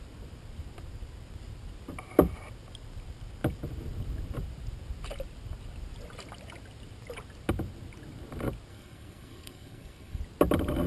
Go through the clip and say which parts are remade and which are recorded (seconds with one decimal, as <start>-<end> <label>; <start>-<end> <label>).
0.0-8.7 recorded; 8.7-10.2 remade; 10.2-10.9 recorded